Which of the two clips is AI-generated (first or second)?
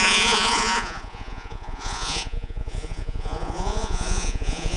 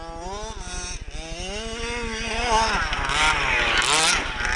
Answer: first